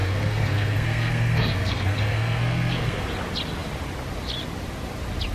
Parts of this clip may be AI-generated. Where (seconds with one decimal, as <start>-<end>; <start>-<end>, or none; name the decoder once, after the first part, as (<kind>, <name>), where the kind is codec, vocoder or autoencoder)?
0.0-3.0 (codec, SNAC)